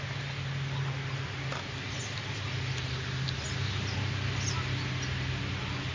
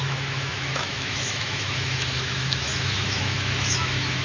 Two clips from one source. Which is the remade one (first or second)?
second